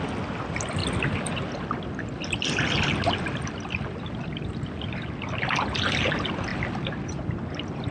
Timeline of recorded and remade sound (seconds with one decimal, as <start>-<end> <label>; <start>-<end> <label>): 0.0-7.9 recorded